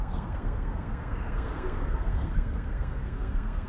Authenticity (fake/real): fake